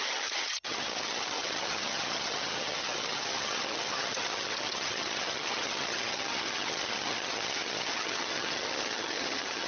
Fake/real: fake